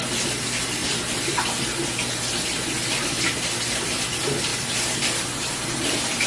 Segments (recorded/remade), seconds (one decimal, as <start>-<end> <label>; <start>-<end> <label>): 0.0-0.8 recorded; 0.8-3.4 remade; 3.4-4.5 recorded; 4.5-5.3 remade; 5.3-6.3 recorded